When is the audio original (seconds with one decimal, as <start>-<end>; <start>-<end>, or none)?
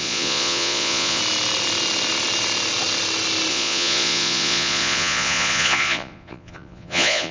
1.2-3.5